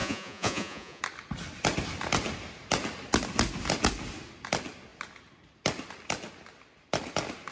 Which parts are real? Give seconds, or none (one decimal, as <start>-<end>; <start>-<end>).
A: 1.0-7.5